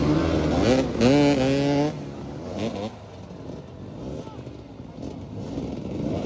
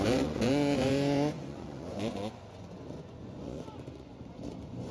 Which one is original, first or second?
first